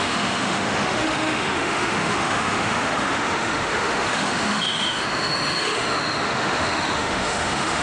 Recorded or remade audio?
remade